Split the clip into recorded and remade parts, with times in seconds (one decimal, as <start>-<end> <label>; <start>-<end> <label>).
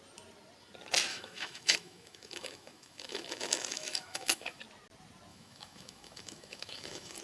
0.0-1.1 recorded; 1.1-4.6 remade; 4.6-5.3 recorded; 5.3-7.2 remade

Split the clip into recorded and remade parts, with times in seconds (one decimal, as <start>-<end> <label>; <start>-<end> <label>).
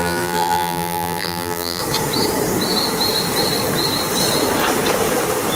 0.0-1.8 remade; 1.8-5.6 recorded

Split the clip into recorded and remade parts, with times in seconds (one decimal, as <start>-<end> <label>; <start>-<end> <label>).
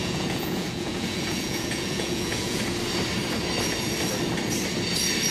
0.0-2.6 remade; 2.6-5.3 recorded